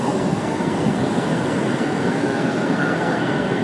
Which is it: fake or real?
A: fake